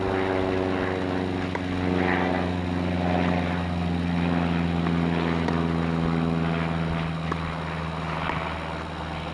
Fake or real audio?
real